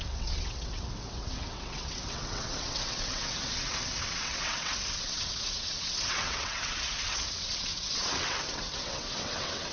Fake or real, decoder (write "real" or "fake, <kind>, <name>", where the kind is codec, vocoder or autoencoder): fake, vocoder, WaveNeXt